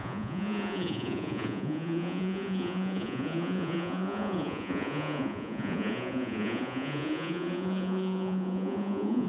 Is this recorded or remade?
remade